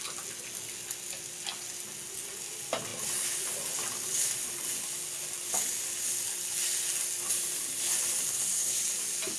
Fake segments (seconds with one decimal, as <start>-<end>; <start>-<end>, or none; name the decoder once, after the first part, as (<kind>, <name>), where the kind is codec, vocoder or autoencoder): 8.3-8.8 (codec, SNAC)